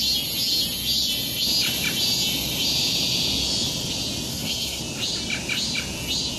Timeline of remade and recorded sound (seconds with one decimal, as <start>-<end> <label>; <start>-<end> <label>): 0.0-4.3 recorded; 4.3-4.8 remade; 4.8-6.4 recorded